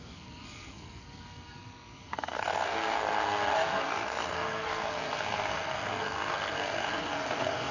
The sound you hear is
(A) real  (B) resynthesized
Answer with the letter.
B